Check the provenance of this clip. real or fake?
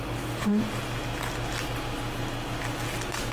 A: real